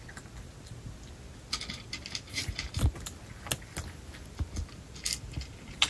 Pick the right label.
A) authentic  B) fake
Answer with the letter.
A